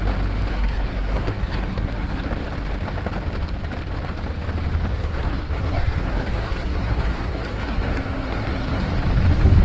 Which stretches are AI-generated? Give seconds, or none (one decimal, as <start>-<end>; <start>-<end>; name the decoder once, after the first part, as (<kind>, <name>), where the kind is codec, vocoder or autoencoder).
0.5-2.3 (codec, SNAC); 4.9-8.9